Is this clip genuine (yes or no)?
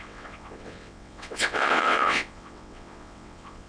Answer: no